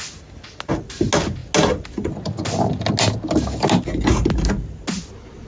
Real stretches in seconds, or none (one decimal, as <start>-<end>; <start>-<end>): 0.0-5.5